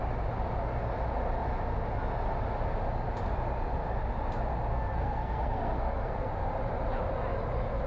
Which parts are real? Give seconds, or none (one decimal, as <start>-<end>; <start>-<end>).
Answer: 0.0-4.7; 6.3-7.9